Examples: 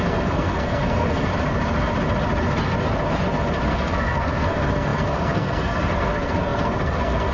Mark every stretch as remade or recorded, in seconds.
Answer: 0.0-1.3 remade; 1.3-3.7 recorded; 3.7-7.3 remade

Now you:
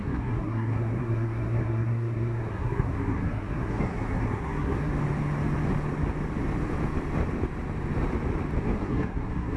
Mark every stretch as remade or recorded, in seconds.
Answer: 0.0-4.9 remade; 4.9-8.6 recorded; 8.6-9.6 remade

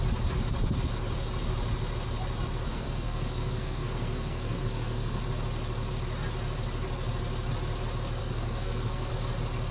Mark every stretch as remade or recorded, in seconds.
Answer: 0.0-2.7 recorded; 2.7-5.2 remade; 5.2-8.2 recorded; 8.2-9.1 remade; 9.1-9.7 recorded

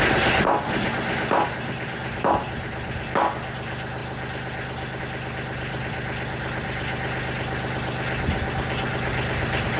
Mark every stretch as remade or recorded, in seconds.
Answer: 0.0-9.8 recorded

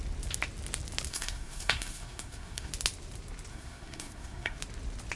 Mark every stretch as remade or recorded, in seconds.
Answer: 0.0-1.1 recorded; 1.1-2.7 remade; 2.7-3.5 recorded; 3.5-4.6 remade; 4.6-5.2 recorded